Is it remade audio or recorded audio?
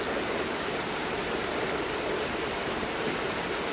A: remade